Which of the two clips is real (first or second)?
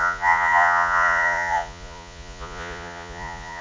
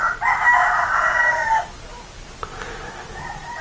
second